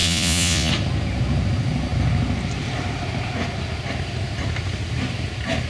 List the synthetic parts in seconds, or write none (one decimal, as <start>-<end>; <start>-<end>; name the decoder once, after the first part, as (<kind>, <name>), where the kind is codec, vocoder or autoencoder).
0.0-0.7 (vocoder, Vocos)